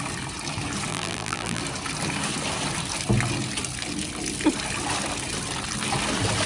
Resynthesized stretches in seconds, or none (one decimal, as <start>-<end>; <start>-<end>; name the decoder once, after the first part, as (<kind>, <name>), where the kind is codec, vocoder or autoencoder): 0.9-1.6 (vocoder, BigVGAN v2)